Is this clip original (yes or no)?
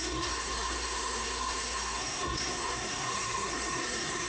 no